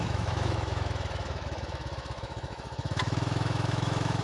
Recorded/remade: remade